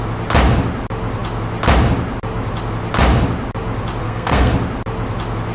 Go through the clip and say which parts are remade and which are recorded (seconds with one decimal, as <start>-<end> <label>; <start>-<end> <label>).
0.0-4.0 recorded; 4.0-4.5 remade; 4.5-5.5 recorded